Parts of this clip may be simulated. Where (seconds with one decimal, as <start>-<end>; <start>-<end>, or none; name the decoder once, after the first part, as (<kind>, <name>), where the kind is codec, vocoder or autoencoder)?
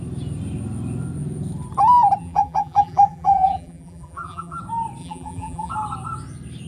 2.2-4.6 (vocoder, BigVGAN v2); 5.0-5.7